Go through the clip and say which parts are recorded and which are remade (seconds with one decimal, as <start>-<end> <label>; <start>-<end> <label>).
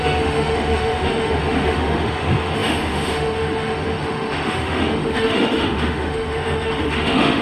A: 0.0-7.4 remade